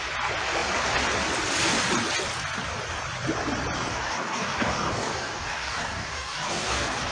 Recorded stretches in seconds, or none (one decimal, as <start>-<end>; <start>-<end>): 0.0-3.9